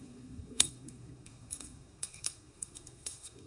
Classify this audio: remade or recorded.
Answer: remade